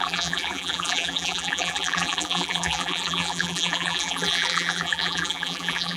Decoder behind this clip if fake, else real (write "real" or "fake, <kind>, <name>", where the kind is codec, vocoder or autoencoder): fake, vocoder, BigVGAN v2